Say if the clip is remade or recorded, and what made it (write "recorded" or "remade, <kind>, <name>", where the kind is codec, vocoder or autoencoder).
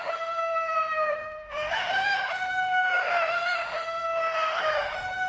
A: remade, autoencoder, DAC-VAE